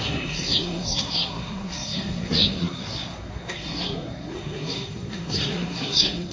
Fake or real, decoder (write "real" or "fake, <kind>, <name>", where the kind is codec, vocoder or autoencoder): fake, codec, SNAC